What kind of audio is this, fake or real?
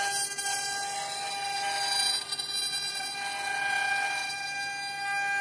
real